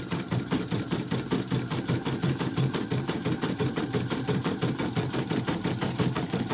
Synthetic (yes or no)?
yes